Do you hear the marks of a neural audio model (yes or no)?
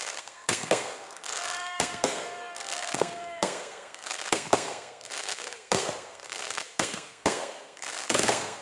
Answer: yes